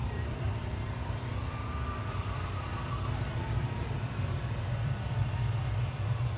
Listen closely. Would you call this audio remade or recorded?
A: remade